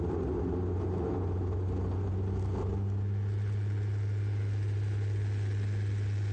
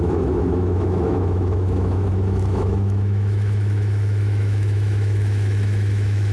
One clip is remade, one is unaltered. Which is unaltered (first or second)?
first